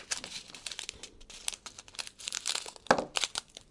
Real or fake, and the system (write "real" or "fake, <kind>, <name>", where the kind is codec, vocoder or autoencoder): real